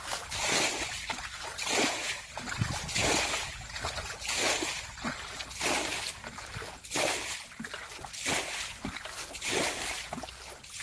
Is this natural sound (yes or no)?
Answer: yes